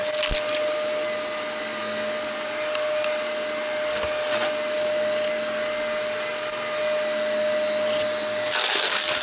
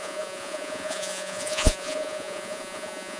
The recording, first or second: first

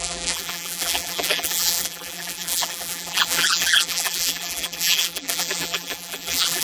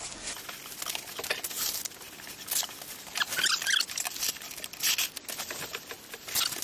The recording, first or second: second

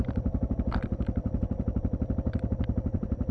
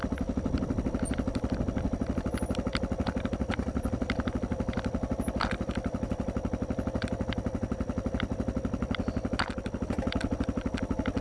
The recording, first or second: second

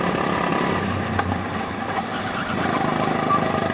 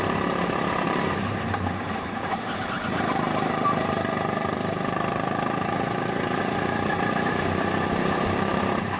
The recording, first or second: first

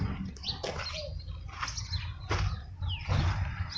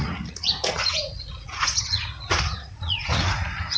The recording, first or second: first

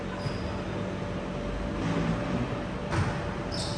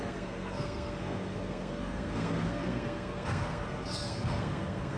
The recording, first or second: first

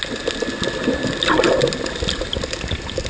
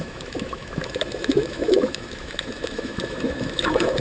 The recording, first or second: first